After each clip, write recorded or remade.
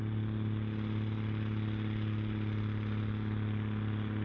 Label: recorded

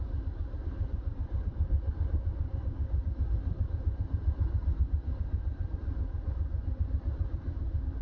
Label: remade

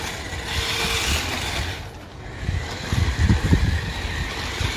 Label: recorded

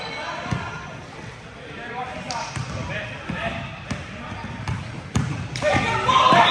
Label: remade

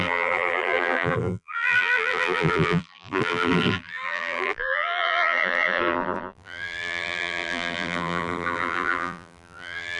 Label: remade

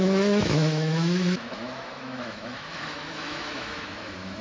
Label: remade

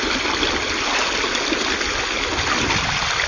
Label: recorded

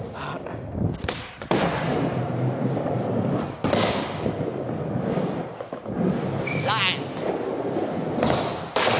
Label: recorded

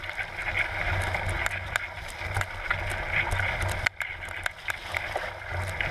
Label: recorded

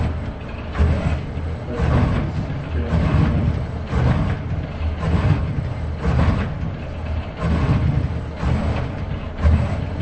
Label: recorded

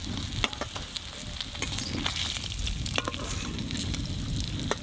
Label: recorded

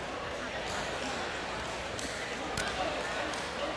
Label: recorded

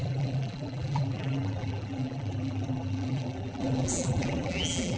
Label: remade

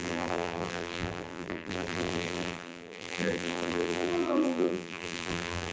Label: remade